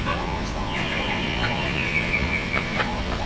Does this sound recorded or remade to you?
remade